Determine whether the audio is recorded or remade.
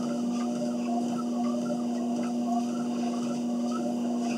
recorded